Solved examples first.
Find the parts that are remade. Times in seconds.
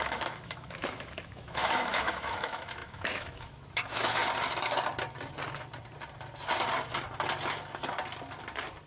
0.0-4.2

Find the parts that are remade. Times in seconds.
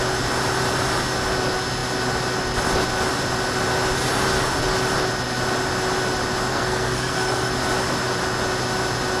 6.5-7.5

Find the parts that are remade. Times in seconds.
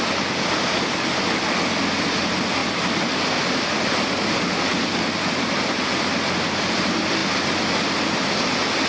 2.6-5.8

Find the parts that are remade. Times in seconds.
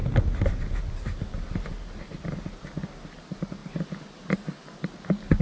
none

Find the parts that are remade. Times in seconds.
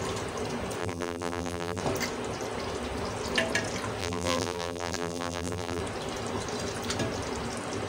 0.8-1.8; 4.0-5.8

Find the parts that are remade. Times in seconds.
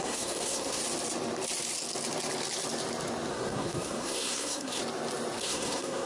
0.0-0.8; 3.3-4.8; 5.4-6.1